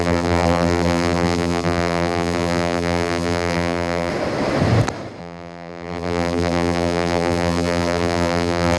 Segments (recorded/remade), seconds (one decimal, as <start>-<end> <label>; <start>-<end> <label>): 0.0-4.1 remade; 4.1-5.2 recorded; 5.2-8.8 remade